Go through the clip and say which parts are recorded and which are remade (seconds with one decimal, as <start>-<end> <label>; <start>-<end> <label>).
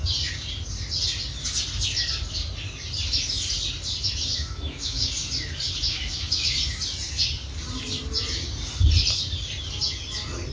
0.0-4.3 recorded; 4.3-5.1 remade; 5.1-5.9 recorded; 5.9-6.8 remade; 6.8-10.5 recorded